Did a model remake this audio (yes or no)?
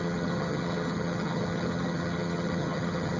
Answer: yes